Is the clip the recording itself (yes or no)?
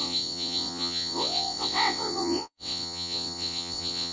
no